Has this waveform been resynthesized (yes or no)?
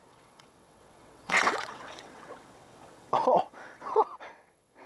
yes